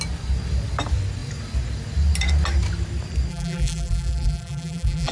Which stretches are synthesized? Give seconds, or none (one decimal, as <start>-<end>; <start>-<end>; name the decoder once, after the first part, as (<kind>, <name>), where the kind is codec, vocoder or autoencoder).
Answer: 3.3-5.1 (vocoder, BigVGAN v2)